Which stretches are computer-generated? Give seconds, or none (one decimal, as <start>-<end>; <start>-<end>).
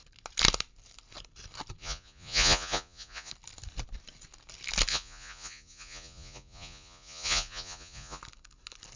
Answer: 1.8-3.3; 4.9-8.2